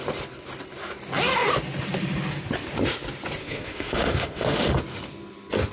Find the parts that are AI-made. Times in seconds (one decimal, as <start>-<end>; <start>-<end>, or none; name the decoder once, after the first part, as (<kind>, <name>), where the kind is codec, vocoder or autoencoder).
3.4-4.8 (autoencoder, DAC-VAE)